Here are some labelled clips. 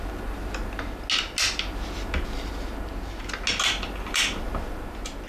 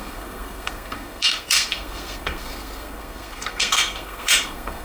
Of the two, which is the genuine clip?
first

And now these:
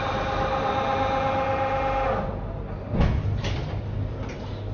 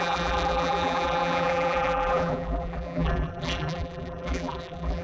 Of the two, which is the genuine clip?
first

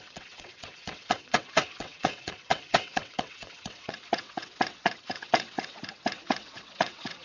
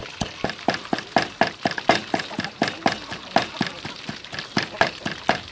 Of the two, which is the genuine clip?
second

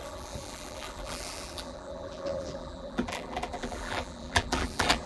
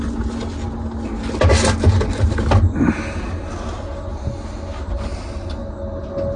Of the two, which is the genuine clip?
second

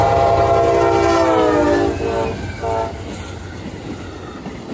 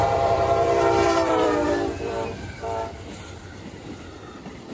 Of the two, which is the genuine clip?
first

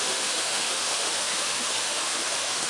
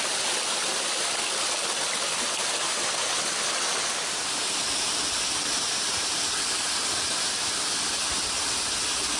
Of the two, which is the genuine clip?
second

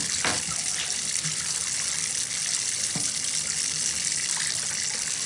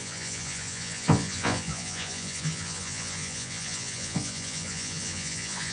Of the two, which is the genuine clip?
first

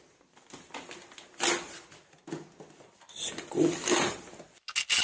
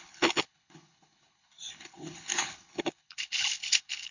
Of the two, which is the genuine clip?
first